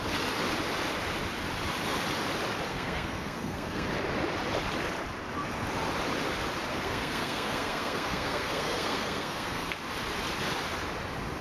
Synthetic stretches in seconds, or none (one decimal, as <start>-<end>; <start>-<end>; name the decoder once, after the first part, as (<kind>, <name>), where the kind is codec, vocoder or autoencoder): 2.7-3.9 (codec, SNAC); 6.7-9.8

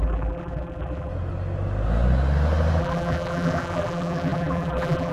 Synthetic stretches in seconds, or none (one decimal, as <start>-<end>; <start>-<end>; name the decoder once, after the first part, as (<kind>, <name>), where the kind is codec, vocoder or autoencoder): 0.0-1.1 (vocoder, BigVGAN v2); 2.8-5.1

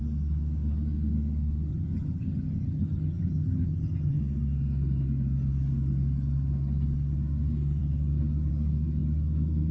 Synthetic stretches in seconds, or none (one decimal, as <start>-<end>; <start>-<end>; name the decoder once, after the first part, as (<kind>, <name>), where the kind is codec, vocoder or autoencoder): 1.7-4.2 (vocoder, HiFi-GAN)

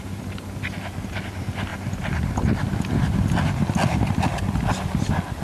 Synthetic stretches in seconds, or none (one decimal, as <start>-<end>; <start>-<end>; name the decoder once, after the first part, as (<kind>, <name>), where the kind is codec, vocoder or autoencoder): none

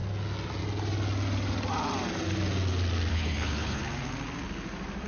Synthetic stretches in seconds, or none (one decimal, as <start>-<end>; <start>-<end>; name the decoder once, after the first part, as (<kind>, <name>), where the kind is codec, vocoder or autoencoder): 3.1-3.8 (codec, HILCodec)

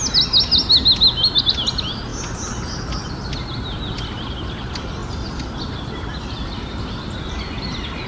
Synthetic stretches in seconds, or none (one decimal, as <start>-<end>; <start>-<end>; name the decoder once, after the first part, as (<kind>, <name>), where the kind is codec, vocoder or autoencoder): none

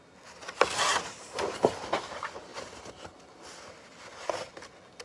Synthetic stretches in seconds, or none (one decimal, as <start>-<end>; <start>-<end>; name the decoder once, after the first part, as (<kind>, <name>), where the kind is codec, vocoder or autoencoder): 0.9-1.8 (vocoder, BigVGAN v2)